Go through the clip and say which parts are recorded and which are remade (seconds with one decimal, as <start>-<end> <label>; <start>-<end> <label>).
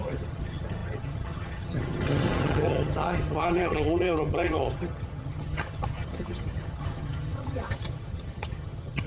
0.0-9.1 remade